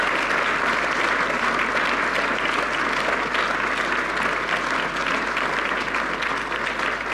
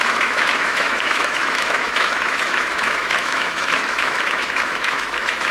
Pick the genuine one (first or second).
first